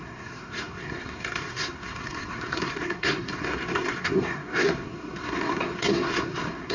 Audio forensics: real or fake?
fake